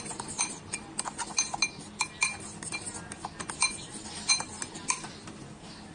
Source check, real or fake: real